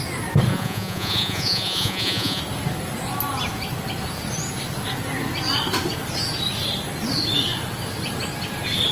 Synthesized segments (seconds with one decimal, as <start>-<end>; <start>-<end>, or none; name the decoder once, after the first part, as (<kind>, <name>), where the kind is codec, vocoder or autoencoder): 0.5-2.4 (vocoder, Vocos)

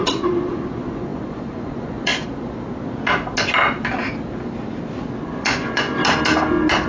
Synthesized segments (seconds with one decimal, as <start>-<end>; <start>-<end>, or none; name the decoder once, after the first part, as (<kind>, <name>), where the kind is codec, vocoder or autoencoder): 0.0-2.1 (vocoder, Vocos); 5.2-6.0

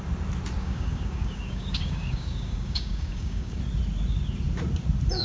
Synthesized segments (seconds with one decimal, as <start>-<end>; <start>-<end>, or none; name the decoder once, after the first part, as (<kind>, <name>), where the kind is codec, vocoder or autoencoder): 0.6-3.6 (codec, DAC)

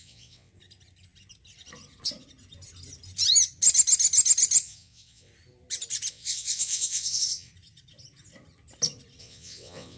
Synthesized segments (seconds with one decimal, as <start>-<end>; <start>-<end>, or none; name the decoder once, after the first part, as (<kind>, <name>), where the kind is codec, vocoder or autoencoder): 0.0-0.5 (vocoder, WaveNeXt); 4.6-5.3; 6.1-7.5; 9.2-10.0